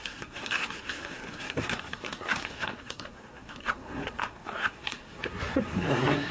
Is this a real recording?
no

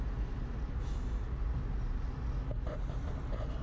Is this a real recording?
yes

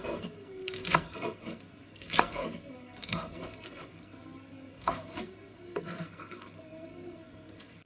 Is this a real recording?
no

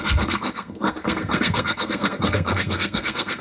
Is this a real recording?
no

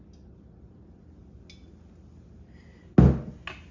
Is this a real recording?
yes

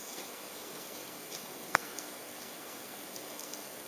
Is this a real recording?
no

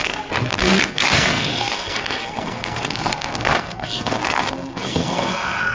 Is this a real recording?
no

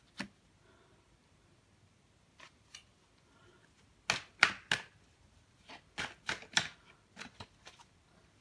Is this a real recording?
yes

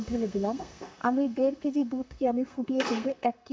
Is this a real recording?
no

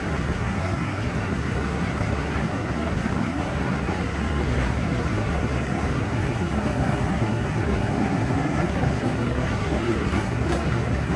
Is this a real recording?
no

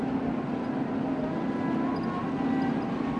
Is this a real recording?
yes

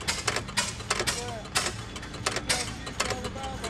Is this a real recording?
yes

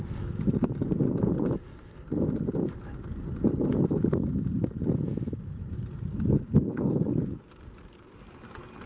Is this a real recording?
yes